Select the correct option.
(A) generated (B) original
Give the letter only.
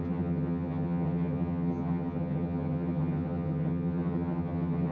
A